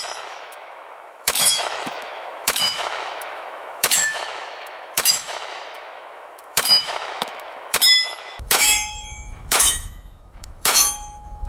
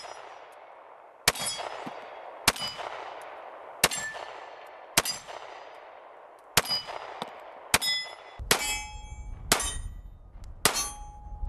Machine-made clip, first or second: first